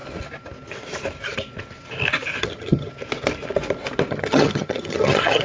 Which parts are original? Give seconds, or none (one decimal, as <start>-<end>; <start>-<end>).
0.0-2.4; 2.9-4.1